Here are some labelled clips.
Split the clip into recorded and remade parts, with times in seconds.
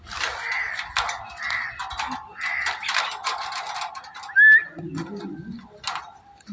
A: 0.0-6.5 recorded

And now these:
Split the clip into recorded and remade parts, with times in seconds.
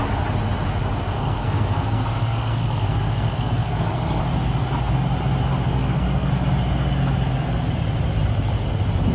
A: 0.0-1.0 recorded; 1.0-4.2 remade; 4.2-5.7 recorded; 5.7-6.3 remade; 6.3-9.1 recorded